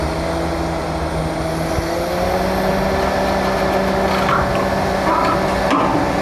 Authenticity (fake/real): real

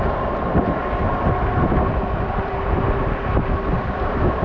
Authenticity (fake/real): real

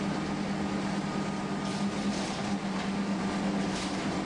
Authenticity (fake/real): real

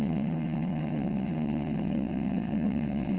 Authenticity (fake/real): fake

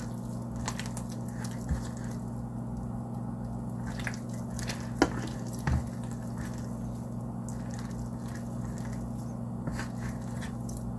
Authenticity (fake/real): real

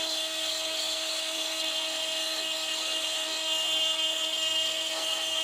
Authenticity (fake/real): fake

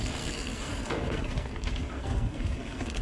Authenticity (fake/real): fake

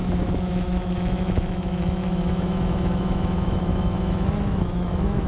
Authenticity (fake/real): fake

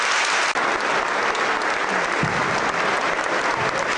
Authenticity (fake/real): real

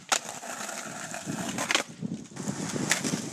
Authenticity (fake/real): real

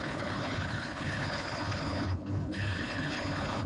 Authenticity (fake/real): fake